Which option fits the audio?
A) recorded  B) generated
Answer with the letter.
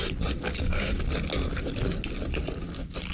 A